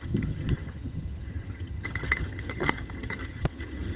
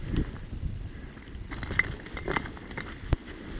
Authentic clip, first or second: second